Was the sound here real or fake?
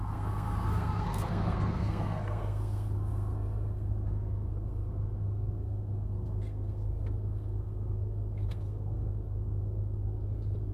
fake